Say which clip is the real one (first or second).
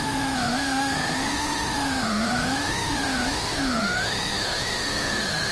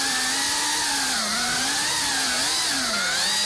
second